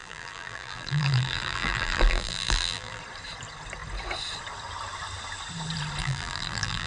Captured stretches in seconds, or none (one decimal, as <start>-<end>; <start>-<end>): 3.0-6.0